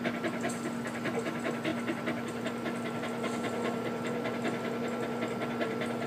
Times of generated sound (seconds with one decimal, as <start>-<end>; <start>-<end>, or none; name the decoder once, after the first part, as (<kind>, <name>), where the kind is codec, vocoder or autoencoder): none